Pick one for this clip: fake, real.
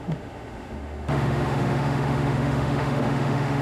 fake